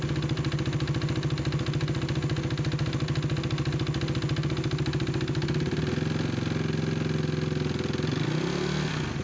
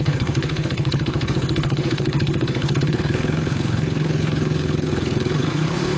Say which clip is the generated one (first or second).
second